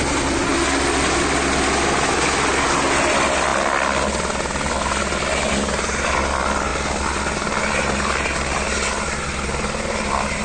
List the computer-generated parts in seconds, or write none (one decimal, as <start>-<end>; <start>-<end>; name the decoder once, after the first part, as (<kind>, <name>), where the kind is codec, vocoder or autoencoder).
none